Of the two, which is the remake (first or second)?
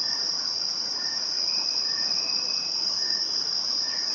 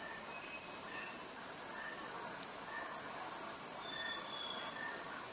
first